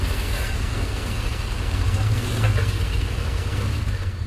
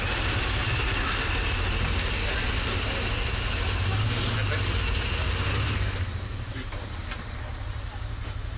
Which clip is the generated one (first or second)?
first